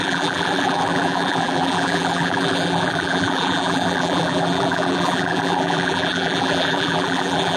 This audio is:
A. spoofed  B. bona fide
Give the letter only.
A